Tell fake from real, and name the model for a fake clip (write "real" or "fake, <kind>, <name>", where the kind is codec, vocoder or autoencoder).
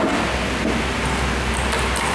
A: real